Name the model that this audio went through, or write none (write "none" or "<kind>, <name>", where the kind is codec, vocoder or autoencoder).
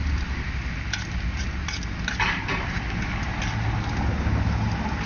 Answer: none